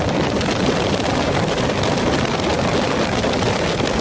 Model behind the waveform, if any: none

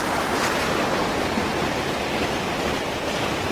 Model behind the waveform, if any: vocoder, BigVGAN v2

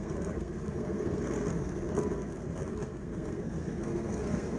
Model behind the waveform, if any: codec, SNAC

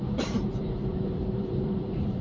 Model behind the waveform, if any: vocoder, BigVGAN v2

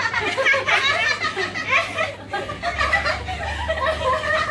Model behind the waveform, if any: none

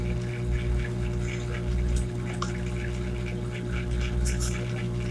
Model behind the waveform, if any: none